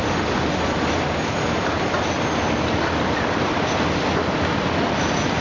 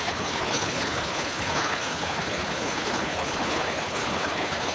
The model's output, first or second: second